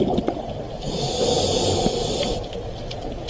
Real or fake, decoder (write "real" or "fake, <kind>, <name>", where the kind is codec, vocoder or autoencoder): real